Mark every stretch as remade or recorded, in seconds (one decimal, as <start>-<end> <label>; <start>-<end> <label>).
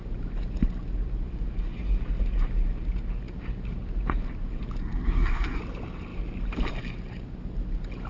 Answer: 0.0-4.8 recorded; 4.8-5.6 remade; 5.6-8.1 recorded